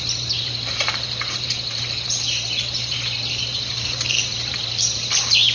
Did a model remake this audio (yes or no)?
yes